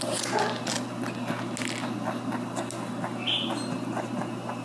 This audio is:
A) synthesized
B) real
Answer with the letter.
B